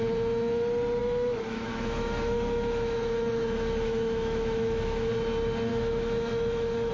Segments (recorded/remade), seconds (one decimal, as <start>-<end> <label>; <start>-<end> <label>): 0.0-1.0 recorded; 1.0-5.1 remade; 5.1-5.7 recorded; 5.7-6.9 remade